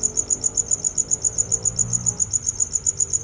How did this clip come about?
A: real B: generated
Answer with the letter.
A